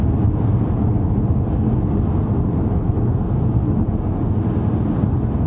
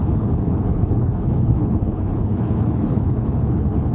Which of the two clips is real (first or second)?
first